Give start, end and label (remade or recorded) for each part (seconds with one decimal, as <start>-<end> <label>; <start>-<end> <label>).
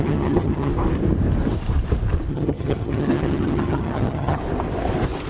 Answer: 0.0-0.7 remade; 0.7-2.3 recorded; 2.3-4.4 remade; 4.4-5.3 recorded